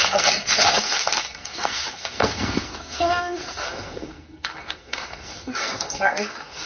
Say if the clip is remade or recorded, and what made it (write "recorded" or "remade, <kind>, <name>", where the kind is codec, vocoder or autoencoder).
remade, codec, SNAC